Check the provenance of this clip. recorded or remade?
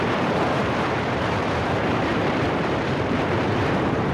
remade